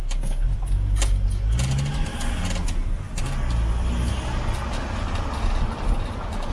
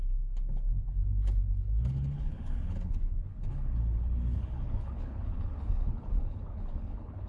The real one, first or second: first